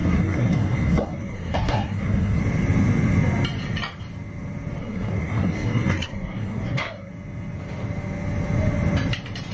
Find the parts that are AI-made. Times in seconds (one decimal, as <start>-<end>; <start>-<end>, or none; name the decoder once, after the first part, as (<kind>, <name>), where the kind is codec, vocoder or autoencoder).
0.0-2.4 (codec, SNAC); 4.8-7.1